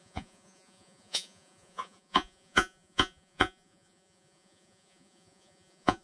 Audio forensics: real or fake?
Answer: fake